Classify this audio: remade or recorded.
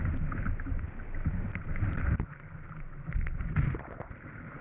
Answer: recorded